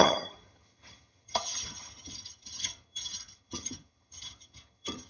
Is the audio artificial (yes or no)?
yes